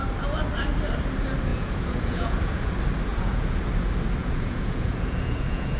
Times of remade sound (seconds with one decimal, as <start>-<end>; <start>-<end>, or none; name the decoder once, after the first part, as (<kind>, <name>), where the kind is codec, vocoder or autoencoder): 1.5-2.7 (vocoder, Vocos); 3.1-3.7; 4.2-5.8